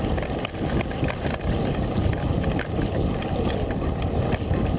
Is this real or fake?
real